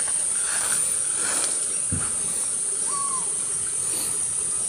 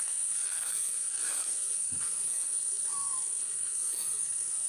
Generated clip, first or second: second